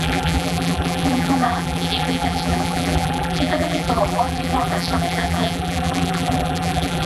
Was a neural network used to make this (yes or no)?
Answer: yes